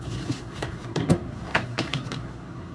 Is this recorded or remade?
remade